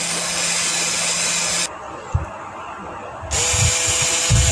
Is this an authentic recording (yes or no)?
yes